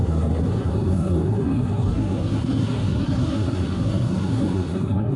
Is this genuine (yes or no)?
no